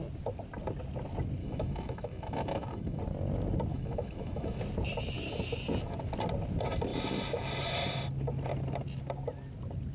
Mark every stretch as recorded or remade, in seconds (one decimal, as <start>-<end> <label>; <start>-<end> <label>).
0.0-1.4 recorded; 1.4-3.0 remade; 3.0-3.7 recorded; 3.7-4.6 remade; 4.6-9.9 recorded